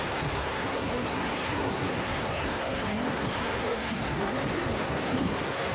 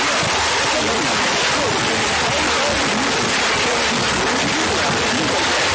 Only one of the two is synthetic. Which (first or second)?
first